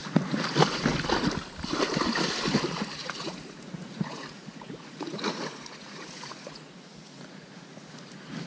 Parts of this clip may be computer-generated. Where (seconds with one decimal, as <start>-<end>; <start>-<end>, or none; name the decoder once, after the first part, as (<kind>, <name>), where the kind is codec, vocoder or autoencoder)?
3.0-8.1 (vocoder, Vocos)

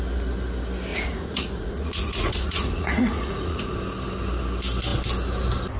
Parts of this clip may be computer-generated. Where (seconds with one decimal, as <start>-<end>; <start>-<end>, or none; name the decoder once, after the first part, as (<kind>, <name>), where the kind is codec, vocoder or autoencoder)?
0.9-3.7 (vocoder, Vocos)

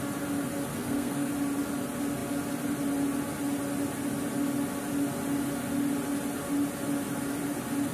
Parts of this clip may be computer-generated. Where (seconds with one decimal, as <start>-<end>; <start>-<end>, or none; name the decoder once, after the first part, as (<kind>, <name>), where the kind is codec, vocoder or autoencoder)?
0.7-1.3 (codec, SNAC)

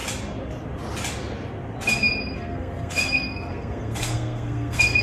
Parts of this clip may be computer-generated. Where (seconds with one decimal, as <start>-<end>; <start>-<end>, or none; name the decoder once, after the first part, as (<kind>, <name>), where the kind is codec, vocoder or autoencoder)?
2.4-5.0 (codec, SNAC)

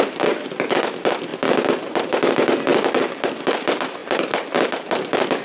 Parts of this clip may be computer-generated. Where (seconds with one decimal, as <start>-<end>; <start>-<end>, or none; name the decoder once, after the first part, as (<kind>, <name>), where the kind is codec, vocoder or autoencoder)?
2.7-3.3 (vocoder, BigVGAN v2); 4.0-4.7